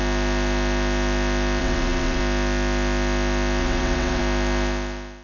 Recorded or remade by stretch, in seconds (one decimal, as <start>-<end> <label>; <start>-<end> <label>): 0.0-1.6 recorded; 1.6-2.2 remade; 2.2-3.6 recorded; 3.6-4.2 remade; 4.2-5.2 recorded